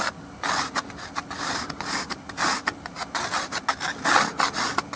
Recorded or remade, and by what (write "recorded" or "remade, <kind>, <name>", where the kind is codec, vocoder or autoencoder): recorded